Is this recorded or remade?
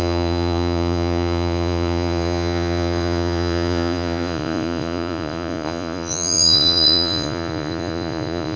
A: remade